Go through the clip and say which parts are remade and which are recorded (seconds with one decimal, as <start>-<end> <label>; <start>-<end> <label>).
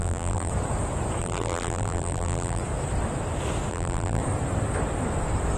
0.0-0.5 remade; 0.5-1.2 recorded; 1.2-2.6 remade; 2.6-3.7 recorded; 3.7-4.2 remade; 4.2-5.6 recorded